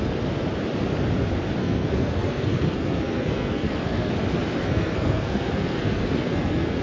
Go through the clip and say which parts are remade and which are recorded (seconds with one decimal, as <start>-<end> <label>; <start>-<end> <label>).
0.0-1.6 recorded; 1.6-4.1 remade; 4.1-4.6 recorded; 4.6-6.8 remade